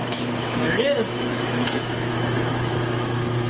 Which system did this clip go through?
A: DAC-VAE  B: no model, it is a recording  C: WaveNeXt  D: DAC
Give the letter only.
A